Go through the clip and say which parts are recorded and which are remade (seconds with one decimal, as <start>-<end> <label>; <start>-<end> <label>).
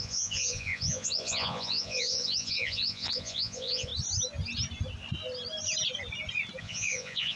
0.0-3.9 remade; 3.9-6.6 recorded; 6.6-7.4 remade